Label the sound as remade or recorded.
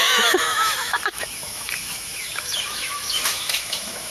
remade